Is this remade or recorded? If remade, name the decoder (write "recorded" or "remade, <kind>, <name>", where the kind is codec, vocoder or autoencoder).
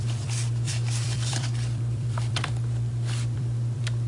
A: remade, vocoder, BigVGAN v2